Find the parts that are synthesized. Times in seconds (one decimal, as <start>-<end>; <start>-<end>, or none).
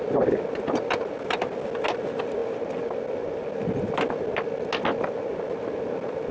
none